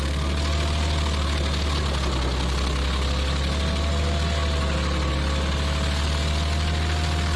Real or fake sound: real